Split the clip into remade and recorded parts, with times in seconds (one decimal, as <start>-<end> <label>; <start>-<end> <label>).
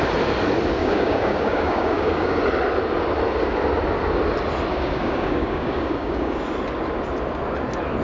0.0-0.8 recorded; 0.8-2.4 remade; 2.4-4.7 recorded; 4.7-6.4 remade; 6.4-8.0 recorded